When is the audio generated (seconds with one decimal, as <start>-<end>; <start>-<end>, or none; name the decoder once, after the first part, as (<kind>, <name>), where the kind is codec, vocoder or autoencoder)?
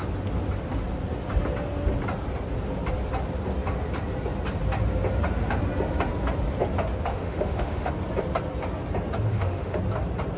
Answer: 7.1-7.9 (autoencoder, DAC-VAE); 9.3-9.8